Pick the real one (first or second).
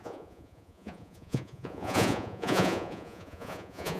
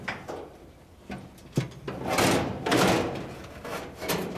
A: second